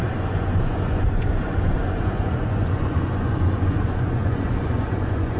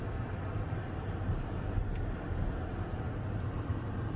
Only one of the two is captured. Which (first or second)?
second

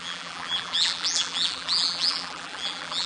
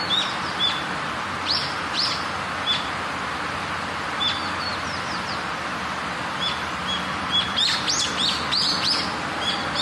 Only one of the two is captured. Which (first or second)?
second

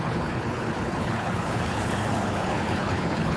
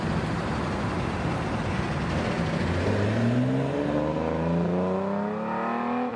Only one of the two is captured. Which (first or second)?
second